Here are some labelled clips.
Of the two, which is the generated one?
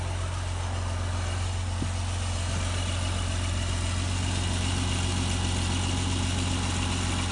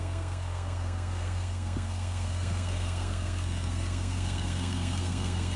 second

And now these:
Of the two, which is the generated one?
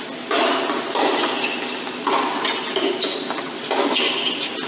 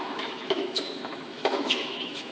second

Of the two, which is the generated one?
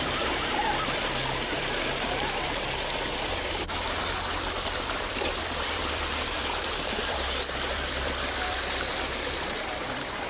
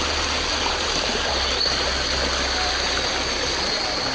first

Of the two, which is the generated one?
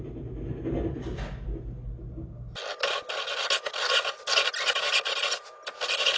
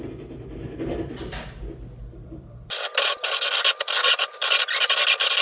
second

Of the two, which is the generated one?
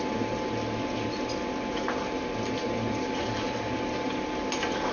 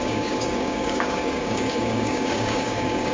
second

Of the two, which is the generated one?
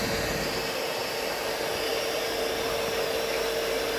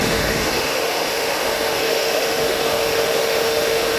second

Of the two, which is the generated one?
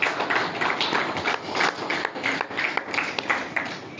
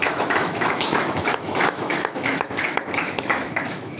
second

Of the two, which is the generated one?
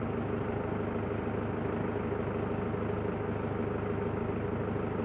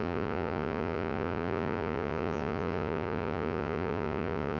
second